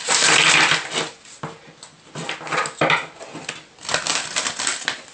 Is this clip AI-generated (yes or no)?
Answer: no